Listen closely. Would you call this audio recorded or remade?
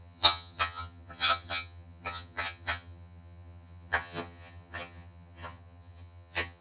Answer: remade